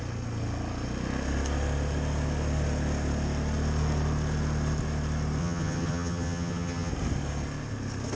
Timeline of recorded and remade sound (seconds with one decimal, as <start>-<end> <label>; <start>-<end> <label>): 0.0-5.4 recorded; 5.4-6.9 remade; 6.9-8.2 recorded